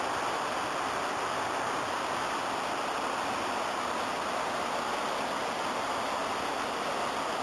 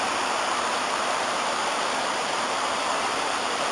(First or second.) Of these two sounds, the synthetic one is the second